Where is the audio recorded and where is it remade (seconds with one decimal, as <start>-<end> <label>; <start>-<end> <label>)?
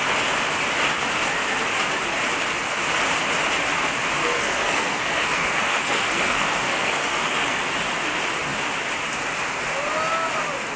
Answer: 0.0-4.2 recorded; 4.2-7.6 remade; 7.6-10.8 recorded